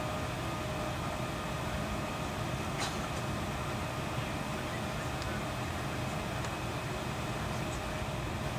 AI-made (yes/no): no